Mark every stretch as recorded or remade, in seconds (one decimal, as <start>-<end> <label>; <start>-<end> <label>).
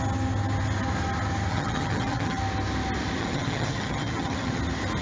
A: 0.0-1.5 recorded; 1.5-2.4 remade; 2.4-3.2 recorded; 3.2-4.6 remade; 4.6-5.0 recorded